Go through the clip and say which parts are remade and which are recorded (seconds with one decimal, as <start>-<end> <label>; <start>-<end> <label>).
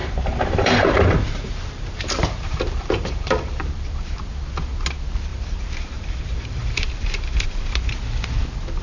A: 0.0-4.0 remade; 4.0-5.3 recorded; 5.3-7.7 remade; 7.7-8.8 recorded